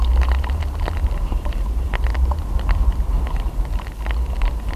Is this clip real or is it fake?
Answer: real